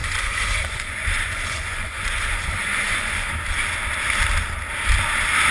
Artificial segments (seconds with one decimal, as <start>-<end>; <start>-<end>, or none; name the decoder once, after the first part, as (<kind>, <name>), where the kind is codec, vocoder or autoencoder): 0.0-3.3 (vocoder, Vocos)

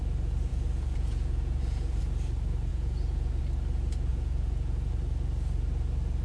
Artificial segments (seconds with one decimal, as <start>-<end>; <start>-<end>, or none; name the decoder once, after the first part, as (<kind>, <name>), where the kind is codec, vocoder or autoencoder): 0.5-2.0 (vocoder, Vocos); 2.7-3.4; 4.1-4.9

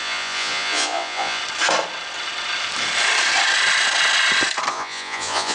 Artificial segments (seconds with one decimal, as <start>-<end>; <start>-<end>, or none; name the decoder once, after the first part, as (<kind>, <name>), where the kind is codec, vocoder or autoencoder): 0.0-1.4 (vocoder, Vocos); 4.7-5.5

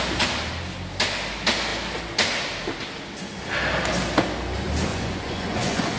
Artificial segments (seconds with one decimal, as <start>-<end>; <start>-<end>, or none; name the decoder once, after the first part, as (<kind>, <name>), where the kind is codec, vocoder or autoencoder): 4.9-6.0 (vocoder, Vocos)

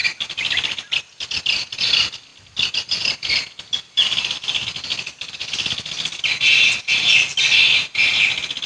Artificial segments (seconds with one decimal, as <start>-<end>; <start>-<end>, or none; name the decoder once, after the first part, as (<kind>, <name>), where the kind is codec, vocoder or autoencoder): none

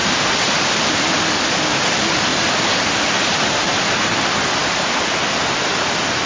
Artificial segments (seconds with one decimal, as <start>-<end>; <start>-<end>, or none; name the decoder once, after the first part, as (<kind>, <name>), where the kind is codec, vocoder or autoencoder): none